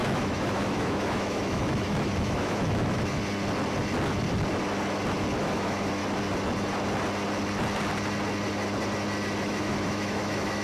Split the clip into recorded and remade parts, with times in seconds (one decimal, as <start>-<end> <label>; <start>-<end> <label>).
0.0-3.2 remade; 3.2-5.4 recorded; 5.4-6.0 remade; 6.0-9.4 recorded; 9.4-10.6 remade